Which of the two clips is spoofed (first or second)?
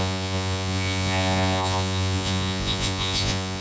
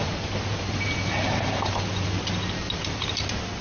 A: first